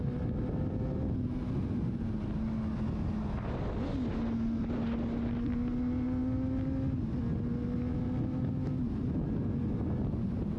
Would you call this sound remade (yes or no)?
no